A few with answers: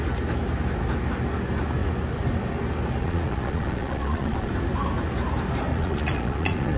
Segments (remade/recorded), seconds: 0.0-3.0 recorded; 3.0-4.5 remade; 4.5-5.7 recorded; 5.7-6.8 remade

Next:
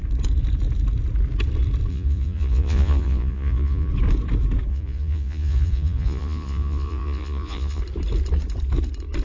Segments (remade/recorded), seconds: 0.0-1.9 recorded; 1.9-3.9 remade; 3.9-4.7 recorded; 4.7-7.8 remade; 7.8-9.2 recorded

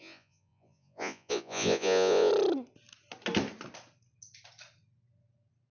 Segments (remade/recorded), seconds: 0.0-2.3 remade; 2.3-5.7 recorded

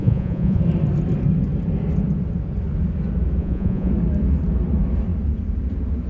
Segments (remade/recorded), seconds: 0.0-0.6 remade; 0.6-3.4 recorded; 3.4-3.9 remade; 3.9-6.1 recorded

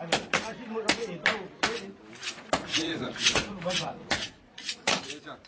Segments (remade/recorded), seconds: 0.0-2.2 recorded; 2.2-5.1 remade; 5.1-5.5 recorded

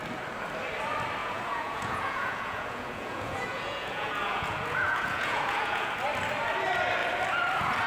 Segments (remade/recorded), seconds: 0.0-1.2 recorded; 1.2-5.9 remade; 5.9-7.9 recorded

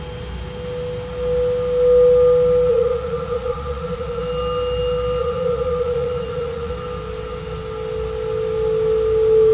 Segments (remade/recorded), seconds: 0.0-2.7 recorded; 2.7-4.2 remade; 4.2-5.2 recorded; 5.2-6.7 remade; 6.7-9.5 recorded

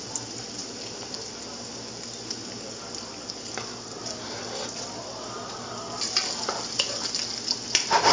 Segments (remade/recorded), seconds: 0.0-8.1 recorded